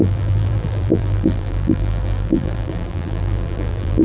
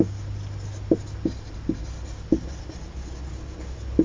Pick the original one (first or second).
second